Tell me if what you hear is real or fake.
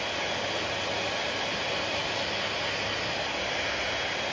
real